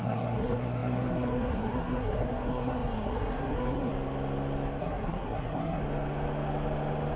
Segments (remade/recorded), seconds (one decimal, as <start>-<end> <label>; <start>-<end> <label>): 0.0-3.9 remade; 3.9-4.8 recorded; 4.8-5.8 remade; 5.8-7.2 recorded